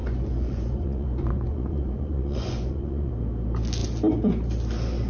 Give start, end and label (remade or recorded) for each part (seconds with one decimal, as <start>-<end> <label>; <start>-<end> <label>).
0.0-3.1 remade; 3.1-5.1 recorded